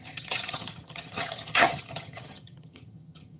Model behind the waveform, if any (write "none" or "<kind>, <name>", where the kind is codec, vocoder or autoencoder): vocoder, HiFi-GAN